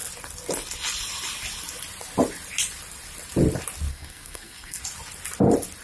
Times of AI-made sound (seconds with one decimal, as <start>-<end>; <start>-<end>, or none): 3.9-4.8